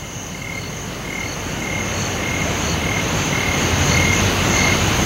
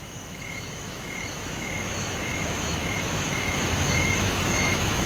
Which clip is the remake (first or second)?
second